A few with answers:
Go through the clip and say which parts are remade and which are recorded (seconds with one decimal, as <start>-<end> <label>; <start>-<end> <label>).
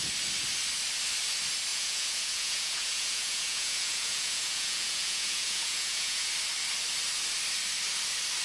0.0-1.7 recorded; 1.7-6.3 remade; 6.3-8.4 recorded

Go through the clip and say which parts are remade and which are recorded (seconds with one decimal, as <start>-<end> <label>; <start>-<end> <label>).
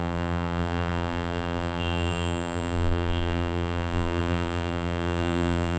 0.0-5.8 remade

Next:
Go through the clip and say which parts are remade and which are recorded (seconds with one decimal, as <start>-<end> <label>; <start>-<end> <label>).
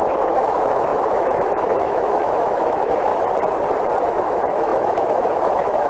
0.0-3.1 remade; 3.1-4.1 recorded; 4.1-5.9 remade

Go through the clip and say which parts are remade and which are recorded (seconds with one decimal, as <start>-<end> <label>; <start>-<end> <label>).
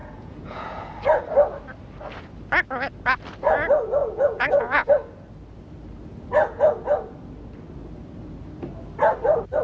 0.0-0.9 remade; 0.9-4.0 recorded; 4.0-4.9 remade; 4.9-9.6 recorded